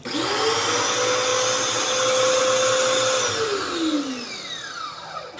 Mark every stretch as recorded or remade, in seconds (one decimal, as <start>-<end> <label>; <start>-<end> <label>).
0.0-5.4 recorded